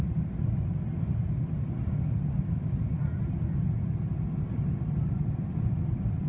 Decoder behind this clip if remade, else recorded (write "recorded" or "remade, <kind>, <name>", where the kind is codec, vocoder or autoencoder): recorded